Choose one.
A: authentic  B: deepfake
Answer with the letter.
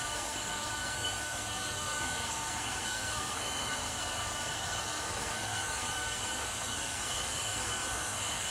B